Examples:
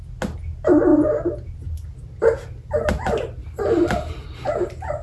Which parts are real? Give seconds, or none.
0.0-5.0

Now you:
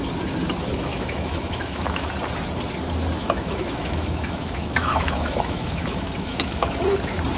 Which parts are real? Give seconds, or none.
0.0-0.9; 2.1-3.2; 6.7-7.4

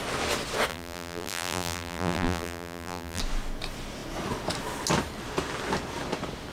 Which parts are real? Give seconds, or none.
0.0-0.7; 3.2-6.5

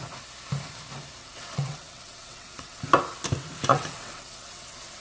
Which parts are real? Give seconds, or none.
0.0-1.2; 2.8-3.7

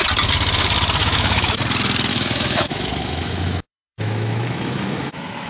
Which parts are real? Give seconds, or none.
0.0-1.0; 1.6-2.1

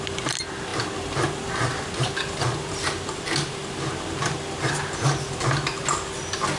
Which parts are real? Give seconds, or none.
0.0-6.6

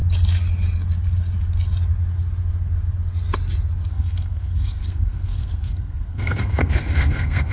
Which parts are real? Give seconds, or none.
0.0-3.9

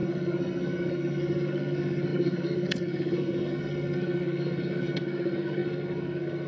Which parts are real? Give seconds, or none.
none